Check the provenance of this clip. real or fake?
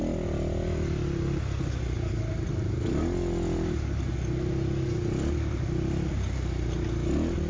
real